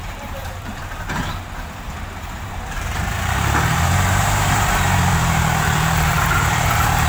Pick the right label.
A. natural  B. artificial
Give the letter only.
B